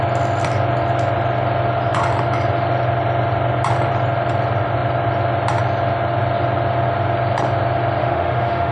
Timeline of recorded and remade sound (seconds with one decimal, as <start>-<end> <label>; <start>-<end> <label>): 0.0-8.0 recorded; 8.0-8.7 remade